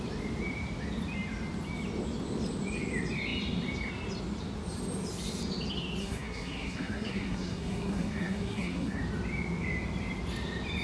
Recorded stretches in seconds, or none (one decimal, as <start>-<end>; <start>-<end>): 0.0-6.0; 9.0-10.8